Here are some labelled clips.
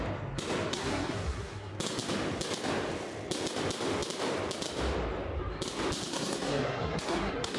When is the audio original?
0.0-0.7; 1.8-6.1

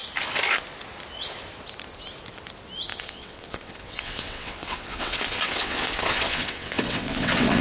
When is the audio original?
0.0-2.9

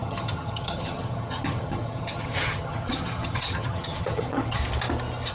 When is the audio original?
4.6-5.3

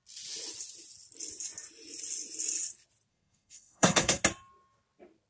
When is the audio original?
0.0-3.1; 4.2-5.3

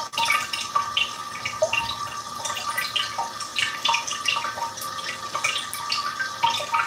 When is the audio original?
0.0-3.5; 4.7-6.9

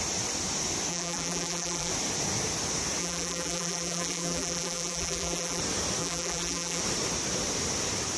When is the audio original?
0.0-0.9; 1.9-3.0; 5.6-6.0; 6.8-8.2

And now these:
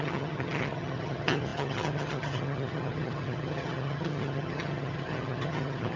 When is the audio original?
none